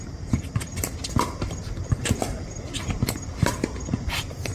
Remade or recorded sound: remade